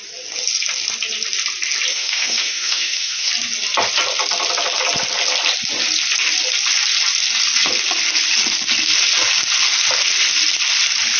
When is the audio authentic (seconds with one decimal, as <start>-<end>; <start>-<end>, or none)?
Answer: 0.0-1.9; 3.3-11.2